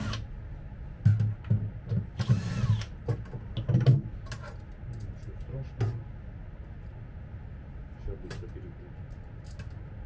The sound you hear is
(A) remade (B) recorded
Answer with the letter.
B